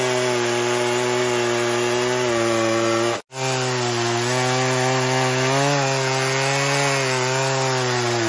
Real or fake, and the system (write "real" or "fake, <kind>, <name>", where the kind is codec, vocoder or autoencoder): real